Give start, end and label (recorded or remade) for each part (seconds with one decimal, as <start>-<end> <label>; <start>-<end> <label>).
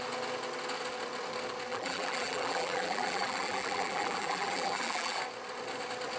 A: 0.0-1.7 recorded; 1.7-5.2 remade; 5.2-6.2 recorded